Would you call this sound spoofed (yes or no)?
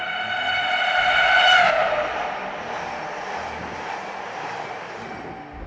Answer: no